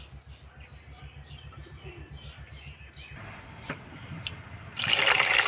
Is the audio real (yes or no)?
yes